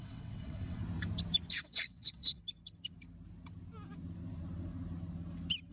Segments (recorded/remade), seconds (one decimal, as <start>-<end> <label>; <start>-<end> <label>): 0.0-0.8 remade; 0.8-1.6 recorded; 1.6-2.4 remade; 2.4-5.7 recorded